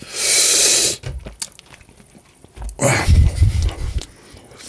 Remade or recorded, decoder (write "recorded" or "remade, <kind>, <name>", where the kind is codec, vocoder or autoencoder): recorded